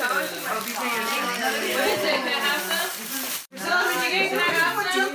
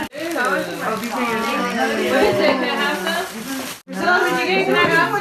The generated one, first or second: first